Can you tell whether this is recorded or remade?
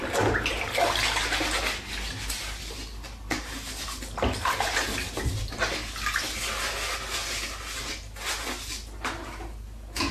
recorded